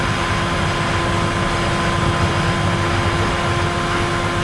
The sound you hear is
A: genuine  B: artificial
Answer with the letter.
A